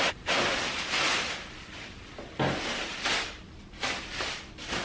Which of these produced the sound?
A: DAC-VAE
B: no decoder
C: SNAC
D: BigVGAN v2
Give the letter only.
B